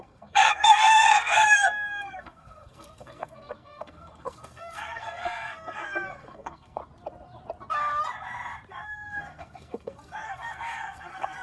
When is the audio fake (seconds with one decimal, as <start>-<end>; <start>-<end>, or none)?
0.0-6.8; 8.7-11.4